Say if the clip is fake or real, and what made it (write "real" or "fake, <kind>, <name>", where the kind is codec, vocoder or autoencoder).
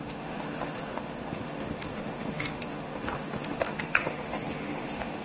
fake, autoencoder, DAC-VAE